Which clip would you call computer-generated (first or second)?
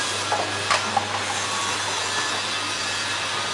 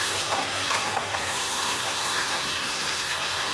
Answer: second